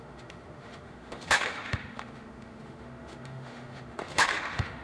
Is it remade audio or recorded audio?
remade